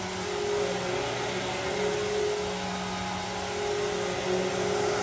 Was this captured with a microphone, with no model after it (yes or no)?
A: yes